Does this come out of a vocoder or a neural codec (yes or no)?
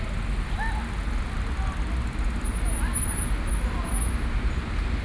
no